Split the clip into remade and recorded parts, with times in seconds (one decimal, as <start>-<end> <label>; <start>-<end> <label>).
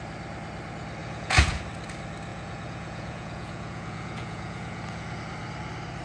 0.0-1.0 recorded; 1.0-1.6 remade; 1.6-2.3 recorded; 2.3-5.2 remade; 5.2-6.0 recorded